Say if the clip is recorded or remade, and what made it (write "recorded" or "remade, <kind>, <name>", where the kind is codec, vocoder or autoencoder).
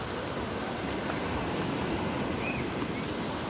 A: recorded